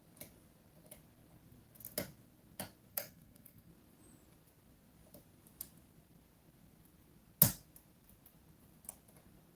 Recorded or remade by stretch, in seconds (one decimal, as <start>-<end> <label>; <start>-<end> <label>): 0.0-2.9 recorded; 2.9-3.7 remade; 3.7-9.5 recorded